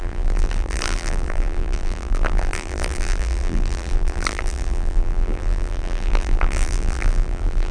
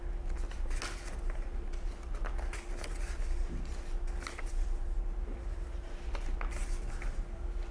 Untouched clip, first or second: second